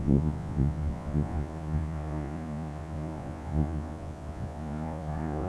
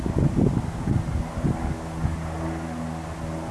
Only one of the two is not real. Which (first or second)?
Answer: first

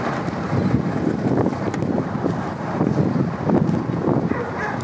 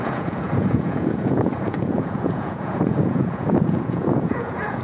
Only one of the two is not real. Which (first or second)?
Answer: second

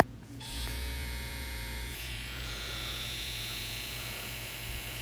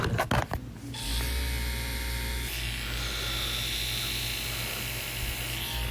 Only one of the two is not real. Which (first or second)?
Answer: first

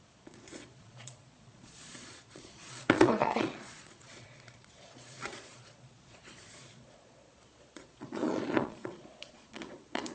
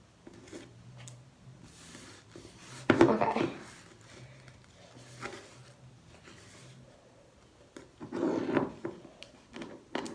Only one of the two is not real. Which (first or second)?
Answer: first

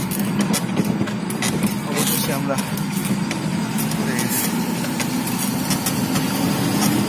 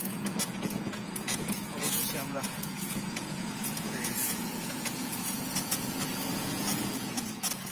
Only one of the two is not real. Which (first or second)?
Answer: second